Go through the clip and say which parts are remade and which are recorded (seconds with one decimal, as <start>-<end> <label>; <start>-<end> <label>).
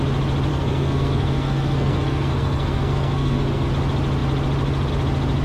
0.0-0.5 recorded; 0.5-3.7 remade; 3.7-5.4 recorded